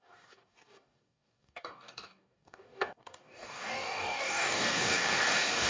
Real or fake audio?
fake